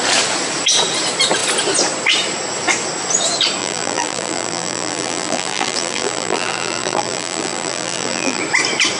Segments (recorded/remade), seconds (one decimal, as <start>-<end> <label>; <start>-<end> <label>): 0.0-3.6 recorded; 3.6-8.4 remade; 8.4-9.0 recorded